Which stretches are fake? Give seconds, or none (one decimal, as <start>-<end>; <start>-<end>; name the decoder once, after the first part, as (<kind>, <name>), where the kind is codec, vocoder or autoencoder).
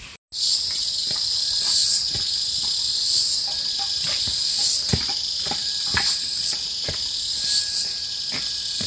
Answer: none